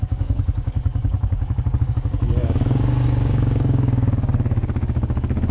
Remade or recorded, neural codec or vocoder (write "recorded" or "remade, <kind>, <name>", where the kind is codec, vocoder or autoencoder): remade, codec, DAC